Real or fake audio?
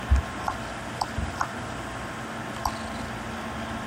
real